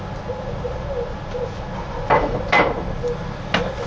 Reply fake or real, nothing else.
real